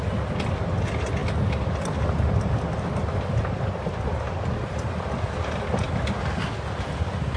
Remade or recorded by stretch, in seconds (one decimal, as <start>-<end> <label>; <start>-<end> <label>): 0.0-7.4 recorded